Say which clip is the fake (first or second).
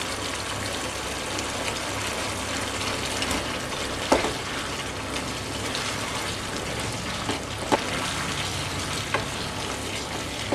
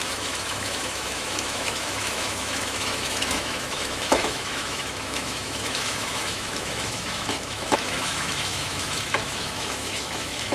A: second